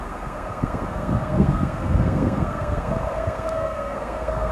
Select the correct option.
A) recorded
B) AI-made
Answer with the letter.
B